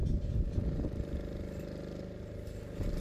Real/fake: real